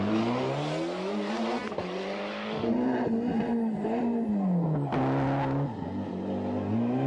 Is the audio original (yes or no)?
yes